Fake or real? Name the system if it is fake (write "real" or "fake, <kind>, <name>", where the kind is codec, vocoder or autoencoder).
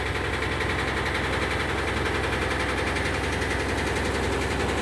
real